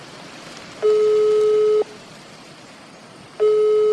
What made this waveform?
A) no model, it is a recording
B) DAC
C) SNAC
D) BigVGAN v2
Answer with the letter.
A